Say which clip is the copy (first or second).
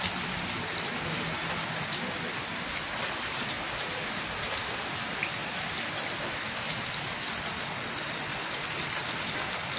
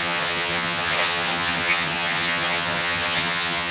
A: second